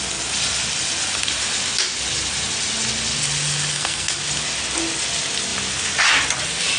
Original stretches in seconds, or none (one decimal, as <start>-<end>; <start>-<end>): 0.0-3.7; 4.2-6.8